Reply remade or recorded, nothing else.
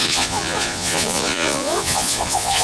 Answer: remade